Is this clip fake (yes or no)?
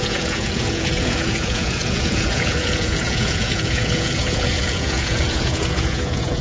yes